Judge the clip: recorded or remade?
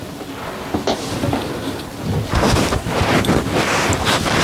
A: recorded